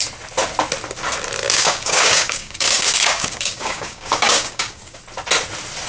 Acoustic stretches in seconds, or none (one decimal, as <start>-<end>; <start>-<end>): 0.0-1.5; 5.0-5.9